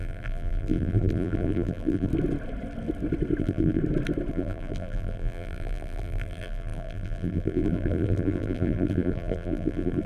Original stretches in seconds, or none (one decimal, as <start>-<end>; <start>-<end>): 2.1-3.4; 3.8-4.3